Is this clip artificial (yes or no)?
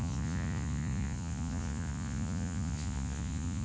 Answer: yes